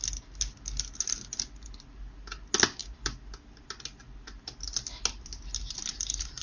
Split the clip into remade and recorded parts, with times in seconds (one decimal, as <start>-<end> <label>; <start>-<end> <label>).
0.0-6.4 recorded